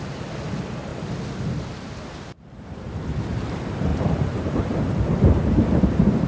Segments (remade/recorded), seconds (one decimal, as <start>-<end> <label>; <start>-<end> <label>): 0.0-0.9 remade; 0.9-1.5 recorded; 1.5-6.3 remade